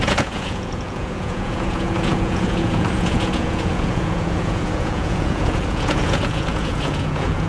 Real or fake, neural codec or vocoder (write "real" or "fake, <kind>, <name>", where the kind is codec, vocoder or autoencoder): fake, vocoder, Vocos